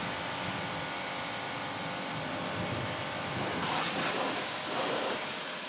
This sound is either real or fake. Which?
real